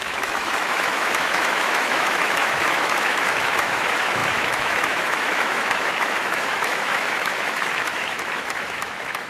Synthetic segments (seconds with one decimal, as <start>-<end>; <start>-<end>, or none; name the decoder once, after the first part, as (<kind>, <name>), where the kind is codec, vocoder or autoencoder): 0.0-9.3 (autoencoder, DAC-VAE)